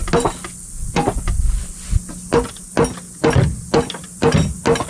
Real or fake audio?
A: real